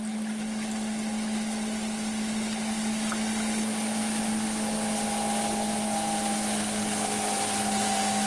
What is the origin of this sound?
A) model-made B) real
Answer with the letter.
B